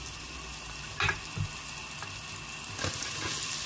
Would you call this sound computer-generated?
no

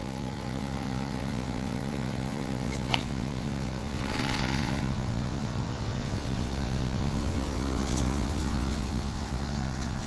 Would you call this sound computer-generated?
yes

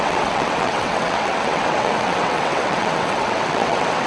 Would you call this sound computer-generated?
yes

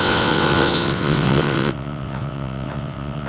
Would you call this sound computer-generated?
yes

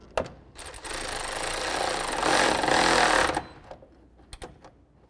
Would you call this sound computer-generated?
no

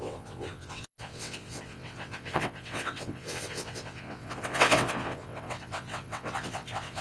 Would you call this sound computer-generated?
yes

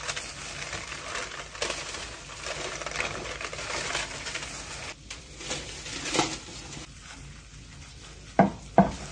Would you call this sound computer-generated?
no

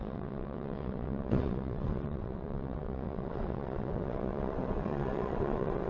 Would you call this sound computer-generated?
yes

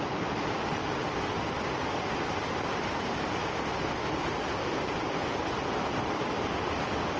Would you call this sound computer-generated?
no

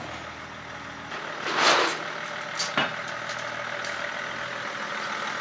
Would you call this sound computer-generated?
no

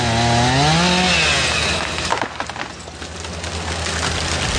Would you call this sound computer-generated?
no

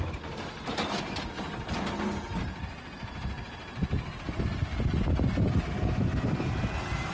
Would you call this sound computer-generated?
no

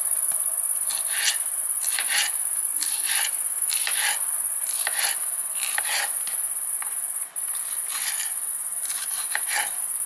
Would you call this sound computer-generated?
no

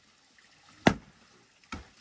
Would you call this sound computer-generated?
no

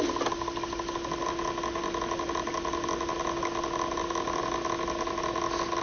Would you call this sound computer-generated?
no